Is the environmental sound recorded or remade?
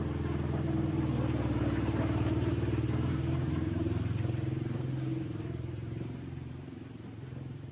remade